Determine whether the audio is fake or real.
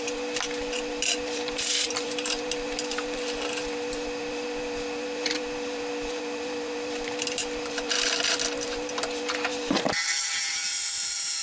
fake